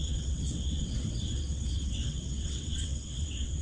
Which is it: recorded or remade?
remade